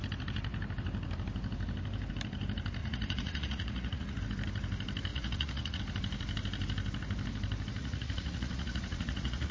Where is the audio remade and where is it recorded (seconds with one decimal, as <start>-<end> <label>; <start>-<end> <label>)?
0.0-2.8 recorded; 2.8-4.2 remade; 4.2-5.1 recorded; 5.1-5.8 remade; 5.8-7.8 recorded; 7.8-9.5 remade

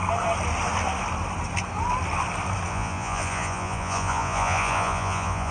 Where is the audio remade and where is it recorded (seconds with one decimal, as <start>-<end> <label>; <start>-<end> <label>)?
0.0-2.7 recorded; 2.7-5.5 remade